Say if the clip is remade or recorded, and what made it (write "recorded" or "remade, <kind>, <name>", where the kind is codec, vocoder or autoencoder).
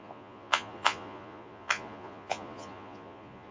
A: remade, vocoder, Vocos